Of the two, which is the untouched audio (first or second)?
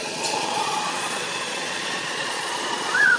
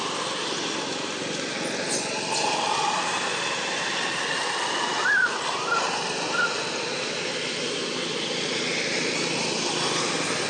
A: second